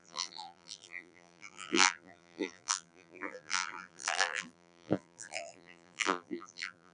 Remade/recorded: remade